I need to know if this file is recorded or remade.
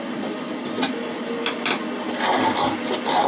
recorded